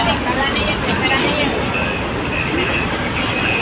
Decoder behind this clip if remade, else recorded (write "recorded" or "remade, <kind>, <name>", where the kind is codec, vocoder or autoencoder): recorded